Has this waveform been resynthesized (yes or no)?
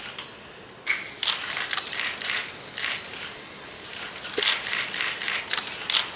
no